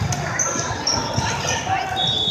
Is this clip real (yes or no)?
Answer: yes